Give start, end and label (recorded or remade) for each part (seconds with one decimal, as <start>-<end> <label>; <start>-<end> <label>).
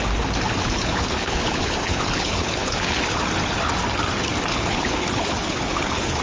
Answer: 0.0-0.6 recorded; 0.6-3.2 remade; 3.2-4.5 recorded; 4.5-6.2 remade